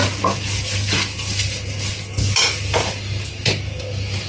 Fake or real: real